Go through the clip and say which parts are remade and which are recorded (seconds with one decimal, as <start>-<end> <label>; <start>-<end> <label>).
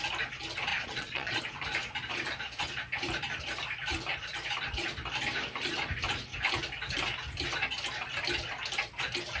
0.0-0.7 recorded; 0.7-1.4 remade; 1.4-9.4 recorded